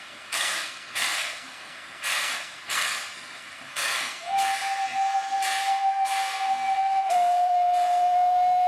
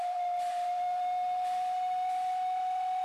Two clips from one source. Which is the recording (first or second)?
second